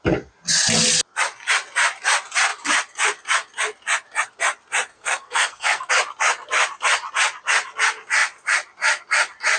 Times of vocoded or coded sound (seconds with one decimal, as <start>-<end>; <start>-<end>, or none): 4.9-5.9